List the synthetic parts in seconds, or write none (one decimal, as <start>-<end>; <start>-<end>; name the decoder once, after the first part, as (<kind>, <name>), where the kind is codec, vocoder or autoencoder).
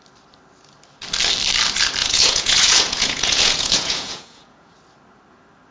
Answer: 2.0-4.7 (vocoder, Vocos)